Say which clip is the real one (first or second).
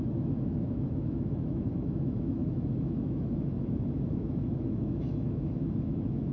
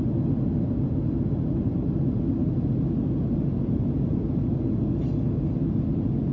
second